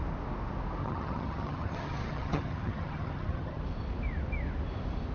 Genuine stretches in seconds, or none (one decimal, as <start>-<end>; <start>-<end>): 0.0-0.8; 3.6-5.1